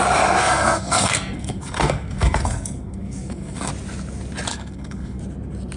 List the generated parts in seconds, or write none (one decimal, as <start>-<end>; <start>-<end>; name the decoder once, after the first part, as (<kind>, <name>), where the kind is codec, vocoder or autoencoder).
0.4-3.7 (codec, SNAC); 4.5-5.2